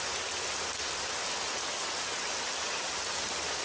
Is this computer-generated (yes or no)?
no